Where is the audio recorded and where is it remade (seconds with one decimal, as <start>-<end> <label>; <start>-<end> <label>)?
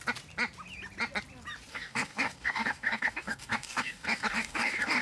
0.0-1.7 recorded; 1.7-5.0 remade